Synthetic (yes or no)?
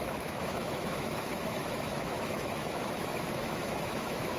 yes